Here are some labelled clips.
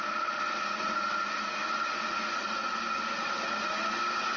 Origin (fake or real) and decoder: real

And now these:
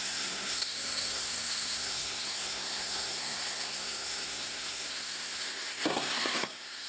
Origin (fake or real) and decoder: fake, codec, SNAC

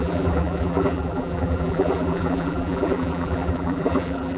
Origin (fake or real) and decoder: fake, vocoder, BigVGAN v2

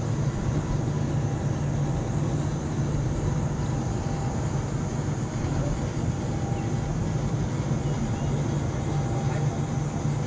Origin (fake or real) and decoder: real